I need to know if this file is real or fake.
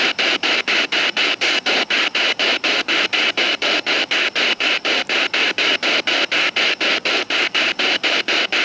fake